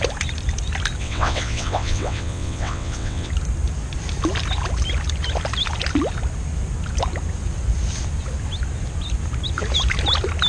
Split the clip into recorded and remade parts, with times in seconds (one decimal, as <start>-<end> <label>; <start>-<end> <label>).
0.0-1.0 recorded; 1.0-3.3 remade; 3.3-10.5 recorded